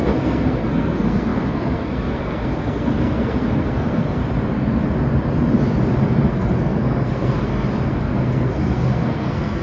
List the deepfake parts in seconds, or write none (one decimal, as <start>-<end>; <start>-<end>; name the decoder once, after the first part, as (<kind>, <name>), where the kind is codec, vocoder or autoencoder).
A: 0.0-4.2 (codec, SNAC); 6.3-9.6